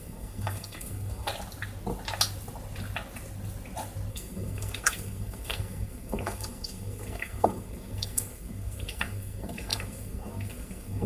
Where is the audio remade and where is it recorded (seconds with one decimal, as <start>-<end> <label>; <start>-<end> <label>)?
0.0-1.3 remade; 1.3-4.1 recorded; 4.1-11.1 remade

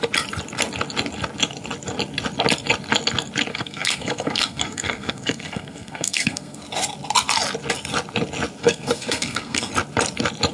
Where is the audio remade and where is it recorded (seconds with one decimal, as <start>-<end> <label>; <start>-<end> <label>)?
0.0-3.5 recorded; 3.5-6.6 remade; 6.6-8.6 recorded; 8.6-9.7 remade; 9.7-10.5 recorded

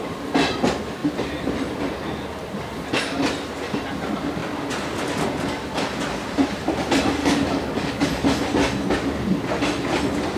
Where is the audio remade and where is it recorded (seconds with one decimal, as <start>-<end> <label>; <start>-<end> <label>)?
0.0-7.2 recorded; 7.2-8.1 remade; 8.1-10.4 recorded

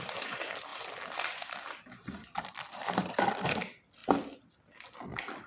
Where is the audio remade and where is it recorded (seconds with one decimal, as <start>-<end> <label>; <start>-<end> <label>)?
0.0-0.7 recorded; 0.7-3.3 remade; 3.3-4.0 recorded; 4.0-5.5 remade